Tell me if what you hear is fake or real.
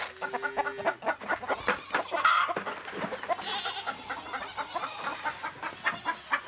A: real